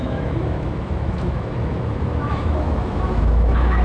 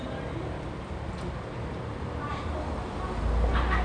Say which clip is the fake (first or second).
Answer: first